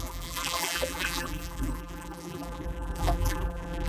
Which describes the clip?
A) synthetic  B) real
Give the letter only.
A